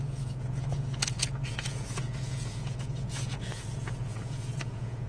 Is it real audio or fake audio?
fake